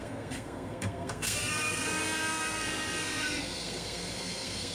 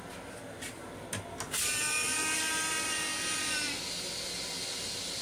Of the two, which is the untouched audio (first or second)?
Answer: second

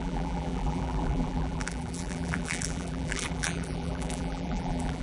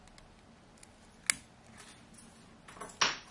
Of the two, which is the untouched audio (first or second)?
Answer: second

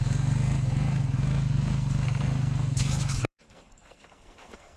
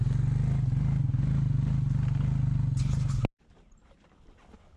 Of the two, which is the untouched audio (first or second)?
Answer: second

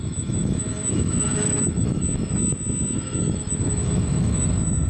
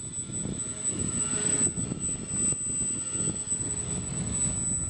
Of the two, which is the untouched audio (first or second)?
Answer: second